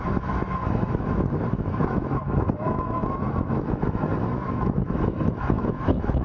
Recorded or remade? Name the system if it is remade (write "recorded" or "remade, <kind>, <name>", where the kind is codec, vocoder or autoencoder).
remade, autoencoder, DAC-VAE